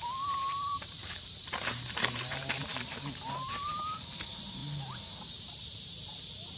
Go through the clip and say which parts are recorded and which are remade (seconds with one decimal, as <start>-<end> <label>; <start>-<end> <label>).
0.0-4.6 remade; 4.6-5.3 recorded; 5.3-6.6 remade